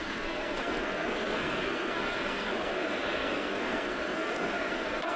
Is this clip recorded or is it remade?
remade